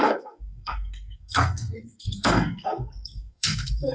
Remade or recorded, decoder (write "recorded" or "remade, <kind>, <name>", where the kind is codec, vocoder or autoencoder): remade, codec, SNAC